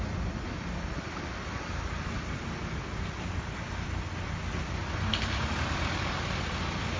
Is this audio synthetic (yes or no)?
no